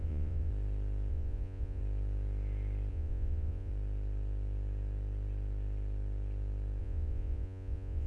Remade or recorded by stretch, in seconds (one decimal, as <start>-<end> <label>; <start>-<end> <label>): 0.0-0.5 remade; 0.5-1.1 recorded; 1.1-1.8 remade; 1.8-2.9 recorded; 2.9-3.7 remade; 3.7-6.8 recorded; 6.8-8.1 remade

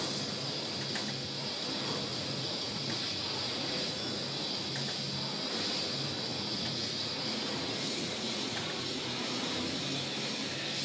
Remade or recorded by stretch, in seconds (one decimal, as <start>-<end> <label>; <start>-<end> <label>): 0.0-2.1 recorded; 2.1-4.1 remade; 4.1-6.3 recorded; 6.3-9.0 remade; 9.0-10.8 recorded

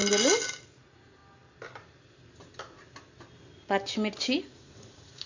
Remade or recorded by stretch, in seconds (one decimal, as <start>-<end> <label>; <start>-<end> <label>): 0.0-0.7 recorded; 0.7-1.2 remade; 1.2-4.4 recorded; 4.4-5.3 remade